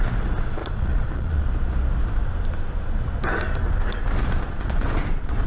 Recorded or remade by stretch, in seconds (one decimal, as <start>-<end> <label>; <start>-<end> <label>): 0.0-0.6 recorded; 0.6-1.5 remade; 1.5-4.2 recorded; 4.2-5.5 remade